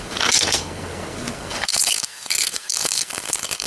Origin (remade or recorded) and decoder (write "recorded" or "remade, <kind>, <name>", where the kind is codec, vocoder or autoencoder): remade, codec, SNAC